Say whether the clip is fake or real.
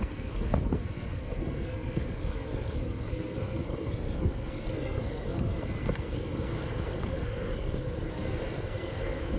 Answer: fake